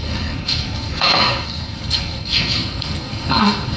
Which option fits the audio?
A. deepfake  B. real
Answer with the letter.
A